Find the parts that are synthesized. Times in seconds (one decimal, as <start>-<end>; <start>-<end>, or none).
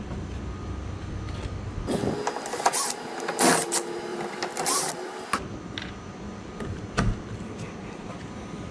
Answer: 4.1-8.7